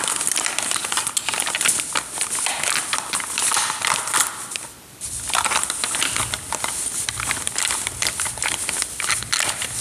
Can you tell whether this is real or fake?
real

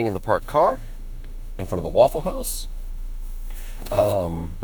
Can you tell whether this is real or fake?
fake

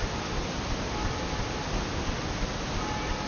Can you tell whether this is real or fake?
real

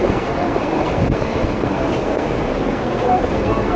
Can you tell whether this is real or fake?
fake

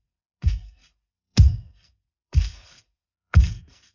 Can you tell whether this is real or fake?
fake